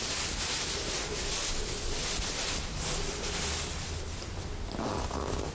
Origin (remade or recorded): recorded